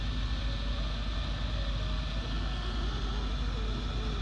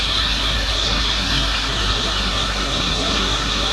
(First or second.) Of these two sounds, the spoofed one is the second